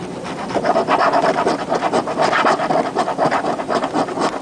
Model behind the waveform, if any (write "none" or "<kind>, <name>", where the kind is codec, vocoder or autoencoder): none